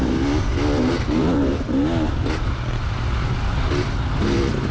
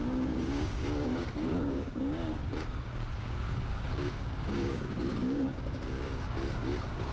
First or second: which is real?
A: first